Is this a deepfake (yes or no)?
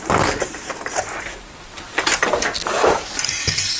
yes